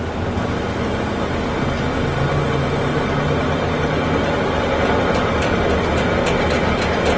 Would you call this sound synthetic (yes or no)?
no